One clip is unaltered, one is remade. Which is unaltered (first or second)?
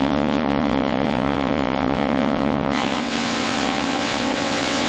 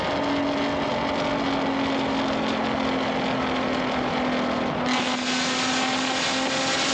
second